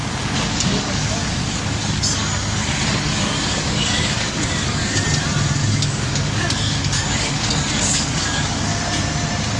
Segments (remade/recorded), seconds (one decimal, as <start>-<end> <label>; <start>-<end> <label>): 0.0-5.0 remade; 5.0-5.6 recorded; 5.6-8.8 remade; 8.8-9.6 recorded